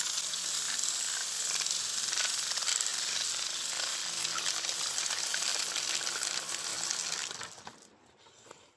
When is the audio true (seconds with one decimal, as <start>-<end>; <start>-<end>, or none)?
0.0-8.8